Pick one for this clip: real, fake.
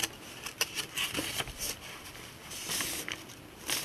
real